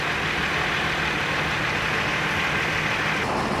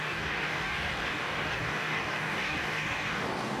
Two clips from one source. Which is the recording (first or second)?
first